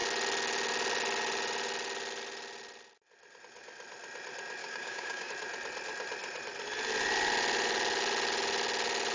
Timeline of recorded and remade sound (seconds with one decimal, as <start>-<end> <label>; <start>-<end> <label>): 0.0-4.6 recorded; 4.6-5.3 remade; 5.3-9.1 recorded